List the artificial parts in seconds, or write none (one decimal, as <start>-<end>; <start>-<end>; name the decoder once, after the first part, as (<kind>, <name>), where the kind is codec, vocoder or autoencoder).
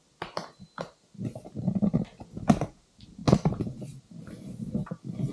none